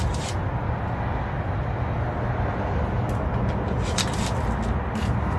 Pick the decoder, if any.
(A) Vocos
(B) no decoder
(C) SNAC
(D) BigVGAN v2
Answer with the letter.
B